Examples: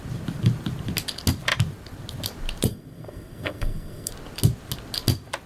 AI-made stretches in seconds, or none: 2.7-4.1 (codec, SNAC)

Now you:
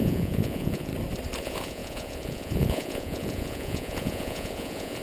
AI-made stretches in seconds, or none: 0.0-0.9 (vocoder, Vocos); 1.4-5.0

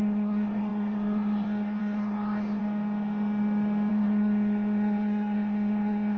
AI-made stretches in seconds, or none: 0.0-2.6 (codec, SNAC); 3.9-6.2

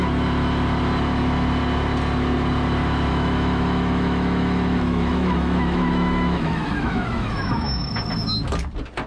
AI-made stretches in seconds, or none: 3.1-7.9 (autoencoder, DAC-VAE)

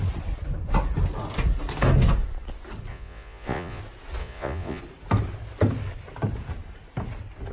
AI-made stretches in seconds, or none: 2.9-3.8 (vocoder, Vocos); 4.2-4.8

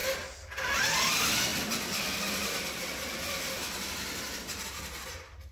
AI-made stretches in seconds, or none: 1.5-4.8 (vocoder, BigVGAN v2)

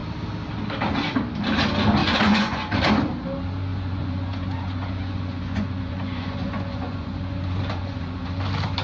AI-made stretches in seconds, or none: 2.0-2.9 (vocoder, Vocos); 3.7-8.3

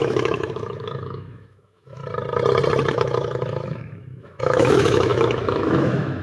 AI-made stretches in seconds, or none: 0.0-2.0 (autoencoder, DAC-VAE); 2.9-6.2